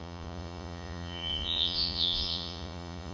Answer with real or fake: fake